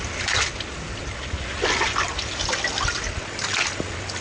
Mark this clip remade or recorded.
recorded